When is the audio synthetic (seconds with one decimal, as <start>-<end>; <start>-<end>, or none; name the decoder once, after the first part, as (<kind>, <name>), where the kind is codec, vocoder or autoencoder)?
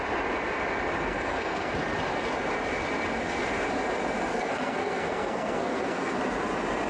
1.0-1.7 (codec, SNAC); 4.3-6.2